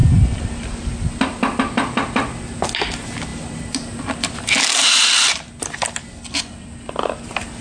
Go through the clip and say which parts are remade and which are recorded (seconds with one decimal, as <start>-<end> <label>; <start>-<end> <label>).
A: 0.0-7.6 recorded